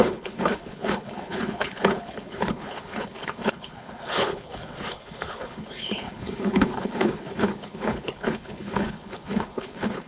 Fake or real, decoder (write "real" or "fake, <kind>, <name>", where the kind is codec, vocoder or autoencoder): fake, codec, HILCodec